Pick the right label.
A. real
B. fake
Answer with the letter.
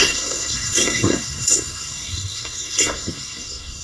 B